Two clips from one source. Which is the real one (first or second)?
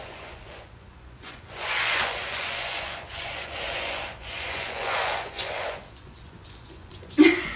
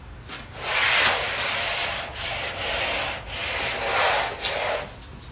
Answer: second